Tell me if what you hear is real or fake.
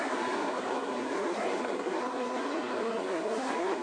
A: fake